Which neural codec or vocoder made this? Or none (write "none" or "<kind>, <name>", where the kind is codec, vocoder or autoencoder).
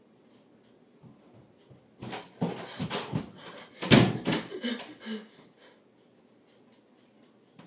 none